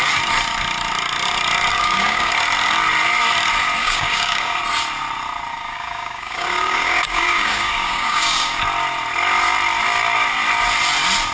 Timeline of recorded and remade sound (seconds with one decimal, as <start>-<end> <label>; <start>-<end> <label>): 0.0-1.7 recorded; 1.7-2.3 remade; 2.3-3.8 recorded; 3.8-4.6 remade; 4.6-5.5 recorded; 5.5-8.6 remade; 8.6-11.3 recorded